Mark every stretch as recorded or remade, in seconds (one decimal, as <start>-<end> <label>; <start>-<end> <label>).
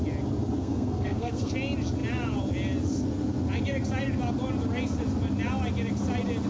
0.0-0.6 recorded; 0.6-1.5 remade; 1.5-6.5 recorded